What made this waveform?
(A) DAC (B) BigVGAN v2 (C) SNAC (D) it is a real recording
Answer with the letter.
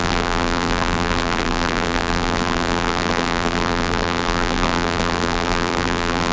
B